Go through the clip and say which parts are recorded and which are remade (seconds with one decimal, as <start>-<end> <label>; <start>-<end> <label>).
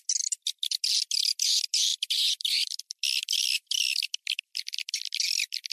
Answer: 0.0-1.9 recorded; 1.9-2.8 remade; 2.8-5.7 recorded